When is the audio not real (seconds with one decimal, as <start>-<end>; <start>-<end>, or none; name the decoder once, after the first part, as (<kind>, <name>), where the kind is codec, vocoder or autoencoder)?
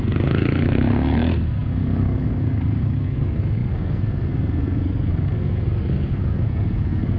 0.0-7.2 (codec, SNAC)